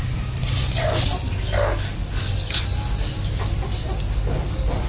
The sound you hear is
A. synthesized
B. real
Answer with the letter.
B